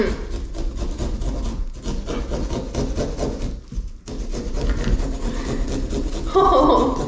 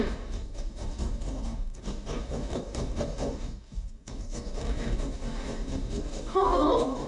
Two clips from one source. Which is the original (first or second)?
first